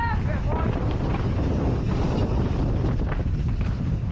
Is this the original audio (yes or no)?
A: yes